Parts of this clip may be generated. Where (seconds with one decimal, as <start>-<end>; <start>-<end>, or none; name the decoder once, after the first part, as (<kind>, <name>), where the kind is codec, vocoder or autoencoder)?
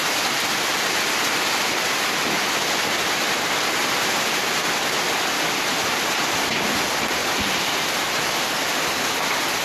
7.2-8.3 (vocoder, BigVGAN v2)